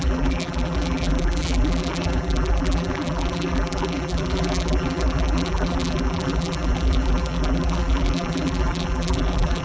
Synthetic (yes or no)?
yes